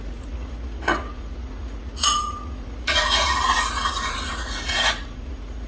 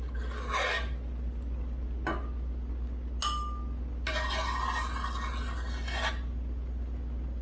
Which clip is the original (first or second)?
second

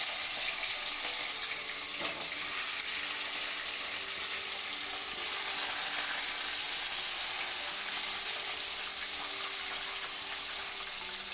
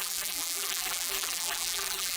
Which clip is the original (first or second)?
first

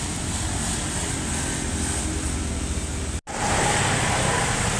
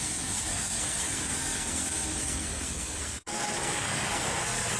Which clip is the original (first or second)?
first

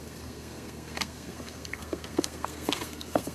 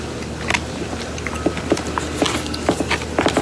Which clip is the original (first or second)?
second